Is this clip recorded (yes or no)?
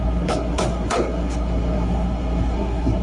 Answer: no